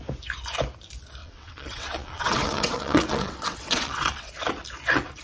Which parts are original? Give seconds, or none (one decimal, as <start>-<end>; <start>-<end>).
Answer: 0.0-1.2; 4.3-5.2